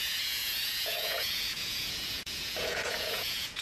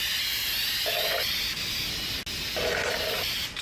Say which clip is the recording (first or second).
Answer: second